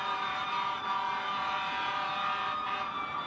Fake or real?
real